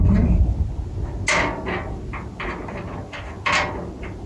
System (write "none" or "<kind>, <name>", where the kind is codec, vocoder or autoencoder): none